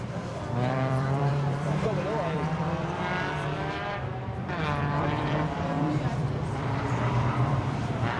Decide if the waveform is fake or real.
fake